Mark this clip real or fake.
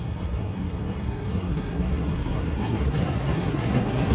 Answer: fake